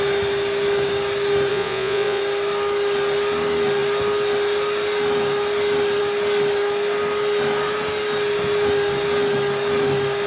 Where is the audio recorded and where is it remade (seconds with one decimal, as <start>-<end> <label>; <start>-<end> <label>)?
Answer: 0.0-1.5 recorded; 1.5-2.2 remade; 2.2-10.3 recorded